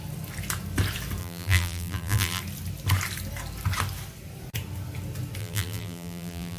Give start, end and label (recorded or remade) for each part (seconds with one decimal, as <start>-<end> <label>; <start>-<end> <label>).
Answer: 0.0-1.2 recorded; 1.2-2.4 remade; 2.4-5.4 recorded; 5.4-6.6 remade